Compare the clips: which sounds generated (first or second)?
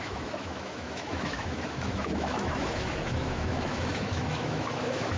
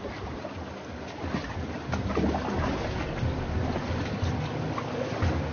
first